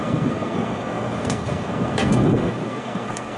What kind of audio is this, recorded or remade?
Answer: remade